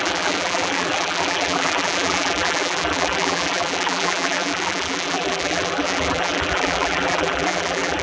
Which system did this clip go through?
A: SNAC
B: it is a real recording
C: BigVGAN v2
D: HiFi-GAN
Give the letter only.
C